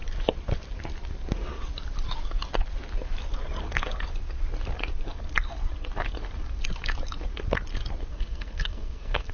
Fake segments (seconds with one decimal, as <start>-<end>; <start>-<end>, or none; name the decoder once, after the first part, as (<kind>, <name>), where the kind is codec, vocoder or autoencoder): 8.1-9.3 (codec, SNAC)